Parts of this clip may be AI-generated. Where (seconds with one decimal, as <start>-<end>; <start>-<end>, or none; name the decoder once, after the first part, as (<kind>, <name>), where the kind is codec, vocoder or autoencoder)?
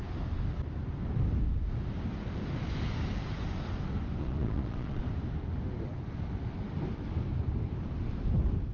4.2-5.0 (vocoder, Vocos)